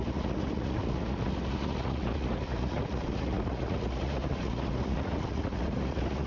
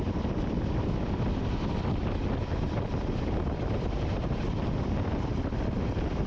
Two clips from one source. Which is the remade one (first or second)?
first